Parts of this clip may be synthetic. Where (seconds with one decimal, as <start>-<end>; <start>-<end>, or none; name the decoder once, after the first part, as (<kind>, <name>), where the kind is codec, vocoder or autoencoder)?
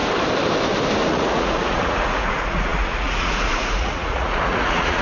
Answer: 1.0-5.0 (vocoder, Vocos)